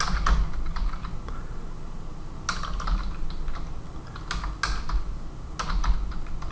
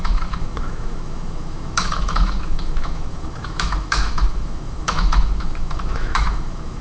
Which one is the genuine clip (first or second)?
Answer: first